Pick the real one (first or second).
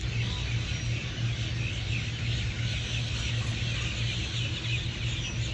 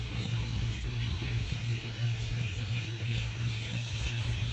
first